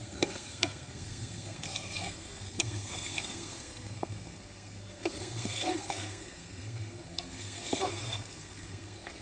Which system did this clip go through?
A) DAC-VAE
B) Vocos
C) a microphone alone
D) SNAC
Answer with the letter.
D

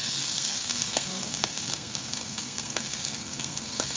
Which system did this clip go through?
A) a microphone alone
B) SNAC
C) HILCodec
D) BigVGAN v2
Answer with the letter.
B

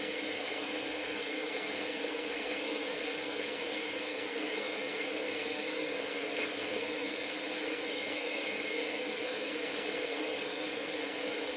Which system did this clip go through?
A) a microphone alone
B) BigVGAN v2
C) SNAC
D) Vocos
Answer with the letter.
C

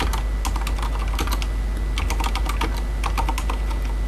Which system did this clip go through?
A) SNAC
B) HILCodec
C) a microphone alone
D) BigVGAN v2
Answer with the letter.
C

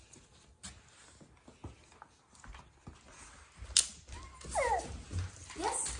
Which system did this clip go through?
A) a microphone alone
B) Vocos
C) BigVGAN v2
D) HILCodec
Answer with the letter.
A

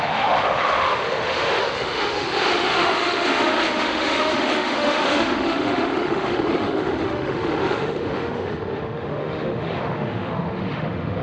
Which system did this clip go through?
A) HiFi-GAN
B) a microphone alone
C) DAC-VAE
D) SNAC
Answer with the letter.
C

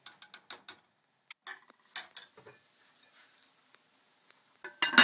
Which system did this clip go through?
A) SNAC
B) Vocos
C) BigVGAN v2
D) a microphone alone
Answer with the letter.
D